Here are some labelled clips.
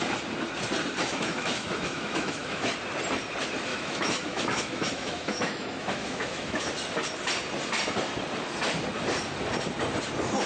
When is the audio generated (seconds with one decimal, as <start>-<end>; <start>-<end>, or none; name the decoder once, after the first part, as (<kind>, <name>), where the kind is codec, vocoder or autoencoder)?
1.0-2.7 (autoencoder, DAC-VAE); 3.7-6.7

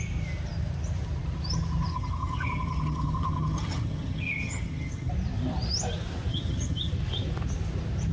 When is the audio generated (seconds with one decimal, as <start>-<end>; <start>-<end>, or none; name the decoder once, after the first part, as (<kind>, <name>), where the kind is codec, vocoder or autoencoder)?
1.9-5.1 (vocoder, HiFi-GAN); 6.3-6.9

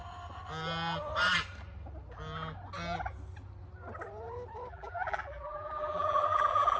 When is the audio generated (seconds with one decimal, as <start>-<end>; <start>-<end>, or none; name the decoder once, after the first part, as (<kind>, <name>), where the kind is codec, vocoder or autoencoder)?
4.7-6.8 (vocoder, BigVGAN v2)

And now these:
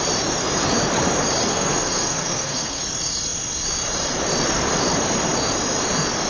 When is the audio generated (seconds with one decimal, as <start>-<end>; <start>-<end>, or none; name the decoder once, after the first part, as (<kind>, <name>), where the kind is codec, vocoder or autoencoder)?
1.5-2.8 (codec, SNAC)